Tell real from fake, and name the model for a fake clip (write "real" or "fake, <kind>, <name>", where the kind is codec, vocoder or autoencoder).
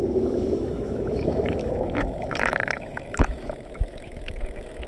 fake, autoencoder, DAC-VAE